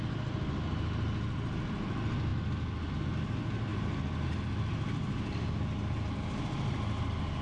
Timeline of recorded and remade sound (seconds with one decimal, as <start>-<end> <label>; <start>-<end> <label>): 0.0-7.4 recorded